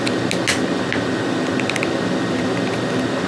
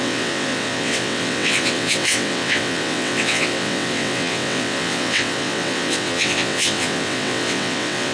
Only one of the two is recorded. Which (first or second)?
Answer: first